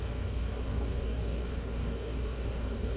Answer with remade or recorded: remade